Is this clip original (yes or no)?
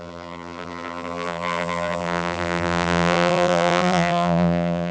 no